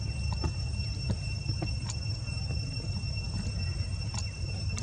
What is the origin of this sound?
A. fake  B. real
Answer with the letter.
B